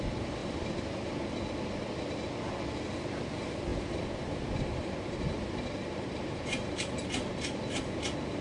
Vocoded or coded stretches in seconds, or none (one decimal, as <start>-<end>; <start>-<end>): 0.4-1.1; 3.7-7.8